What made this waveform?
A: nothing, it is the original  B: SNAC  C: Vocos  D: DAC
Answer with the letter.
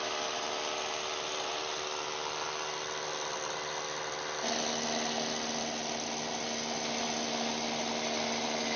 A